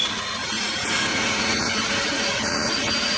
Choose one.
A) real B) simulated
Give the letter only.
B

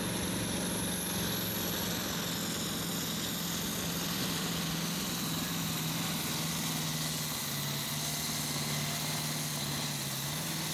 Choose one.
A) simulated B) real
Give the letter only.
B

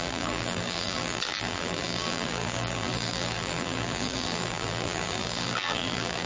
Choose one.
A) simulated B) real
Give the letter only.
A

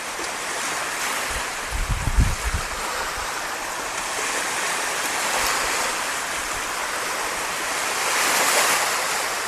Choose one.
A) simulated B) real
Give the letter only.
B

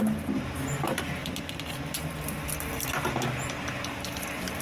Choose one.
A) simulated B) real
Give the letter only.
B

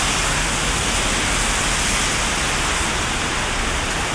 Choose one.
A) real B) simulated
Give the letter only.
A